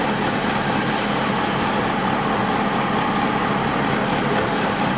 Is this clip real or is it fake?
real